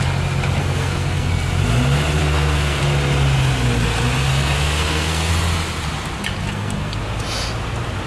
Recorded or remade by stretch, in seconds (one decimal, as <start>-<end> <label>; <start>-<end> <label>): 0.0-0.6 recorded; 0.6-1.3 remade; 1.3-2.2 recorded; 2.2-2.8 remade; 2.8-4.3 recorded; 4.3-5.3 remade; 5.3-6.4 recorded; 6.4-7.0 remade; 7.0-8.1 recorded